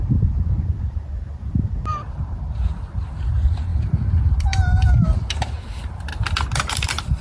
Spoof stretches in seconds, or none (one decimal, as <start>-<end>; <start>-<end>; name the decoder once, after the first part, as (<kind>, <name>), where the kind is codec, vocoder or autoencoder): 0.0-3.7 (vocoder, BigVGAN v2); 4.3-6.1; 6.6-7.2